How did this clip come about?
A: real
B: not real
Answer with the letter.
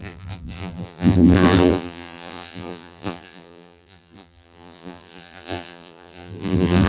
B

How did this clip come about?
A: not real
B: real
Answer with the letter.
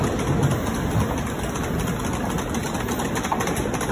B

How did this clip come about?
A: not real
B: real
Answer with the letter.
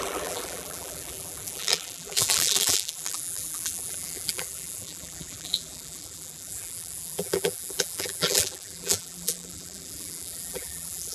A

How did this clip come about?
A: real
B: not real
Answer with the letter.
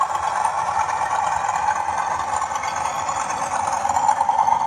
A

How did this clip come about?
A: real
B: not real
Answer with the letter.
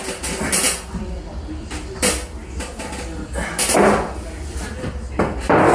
A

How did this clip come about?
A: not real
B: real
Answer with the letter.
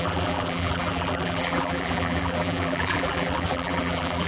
A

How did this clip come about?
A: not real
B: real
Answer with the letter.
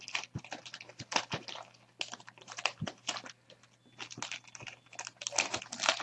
B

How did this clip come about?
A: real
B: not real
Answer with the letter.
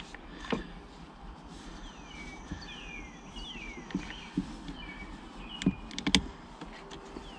A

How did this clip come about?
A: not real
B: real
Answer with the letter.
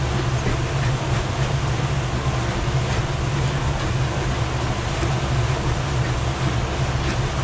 B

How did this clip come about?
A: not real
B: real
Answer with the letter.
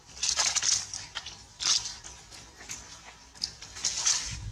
B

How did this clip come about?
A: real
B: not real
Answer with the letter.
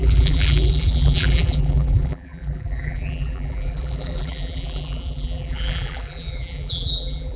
B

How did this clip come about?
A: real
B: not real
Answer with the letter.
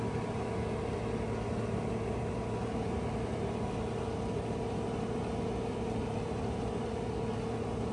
A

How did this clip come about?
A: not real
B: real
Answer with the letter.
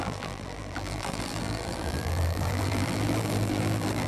A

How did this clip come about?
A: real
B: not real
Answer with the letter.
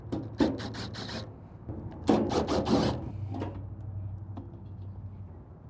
A